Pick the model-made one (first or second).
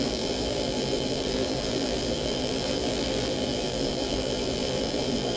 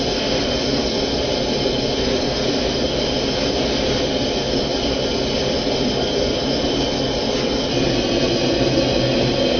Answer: first